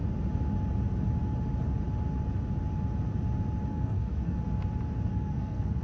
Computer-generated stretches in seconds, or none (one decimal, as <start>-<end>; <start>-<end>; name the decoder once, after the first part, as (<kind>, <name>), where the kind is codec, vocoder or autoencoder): 3.7-4.4 (codec, SNAC); 5.1-5.8